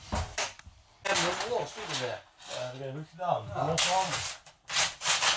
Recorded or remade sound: recorded